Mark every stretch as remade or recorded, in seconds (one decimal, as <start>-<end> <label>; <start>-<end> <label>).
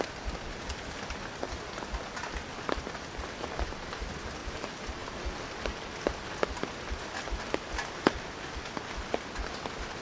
0.0-4.4 recorded; 4.4-5.2 remade; 5.2-10.0 recorded